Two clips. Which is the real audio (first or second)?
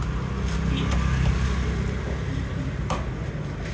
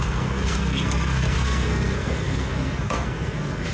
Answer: first